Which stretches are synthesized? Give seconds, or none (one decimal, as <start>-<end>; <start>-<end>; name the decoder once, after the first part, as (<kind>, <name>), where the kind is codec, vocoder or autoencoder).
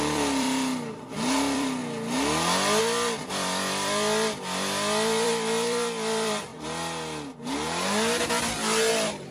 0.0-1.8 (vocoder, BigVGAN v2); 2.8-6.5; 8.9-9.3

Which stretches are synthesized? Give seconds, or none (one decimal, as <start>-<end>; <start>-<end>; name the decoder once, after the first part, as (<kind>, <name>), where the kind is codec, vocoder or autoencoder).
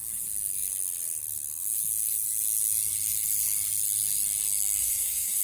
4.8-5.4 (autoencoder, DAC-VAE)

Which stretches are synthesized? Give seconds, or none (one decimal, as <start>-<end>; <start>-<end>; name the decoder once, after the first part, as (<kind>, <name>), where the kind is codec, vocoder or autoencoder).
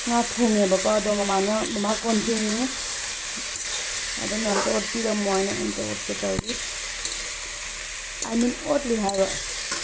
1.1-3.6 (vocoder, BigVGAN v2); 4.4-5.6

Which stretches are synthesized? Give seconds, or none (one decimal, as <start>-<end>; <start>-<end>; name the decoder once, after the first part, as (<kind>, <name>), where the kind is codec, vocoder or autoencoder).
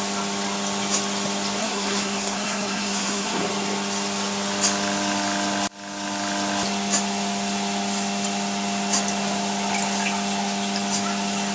1.6-3.5 (codec, SNAC)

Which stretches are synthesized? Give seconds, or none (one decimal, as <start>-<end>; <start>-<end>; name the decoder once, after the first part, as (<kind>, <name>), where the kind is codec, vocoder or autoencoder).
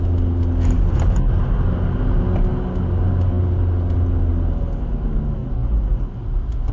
none